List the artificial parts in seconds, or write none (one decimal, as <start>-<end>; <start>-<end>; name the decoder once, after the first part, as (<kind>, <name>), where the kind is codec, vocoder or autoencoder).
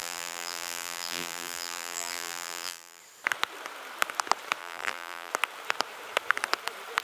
0.0-3.0 (vocoder, BigVGAN v2); 4.6-5.3